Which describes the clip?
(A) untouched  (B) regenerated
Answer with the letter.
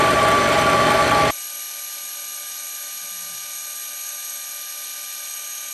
A